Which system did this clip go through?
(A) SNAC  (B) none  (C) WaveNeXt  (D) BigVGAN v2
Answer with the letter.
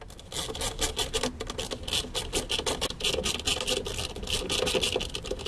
B